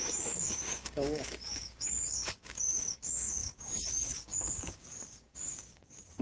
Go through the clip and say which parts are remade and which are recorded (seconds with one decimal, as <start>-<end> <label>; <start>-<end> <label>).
0.0-6.2 remade